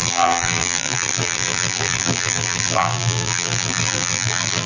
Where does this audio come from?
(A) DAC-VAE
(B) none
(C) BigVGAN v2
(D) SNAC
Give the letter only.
C